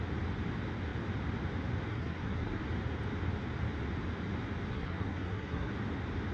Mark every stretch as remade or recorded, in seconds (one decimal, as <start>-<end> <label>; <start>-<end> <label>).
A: 0.0-1.9 recorded; 1.9-2.6 remade; 2.6-4.7 recorded; 4.7-5.7 remade; 5.7-6.3 recorded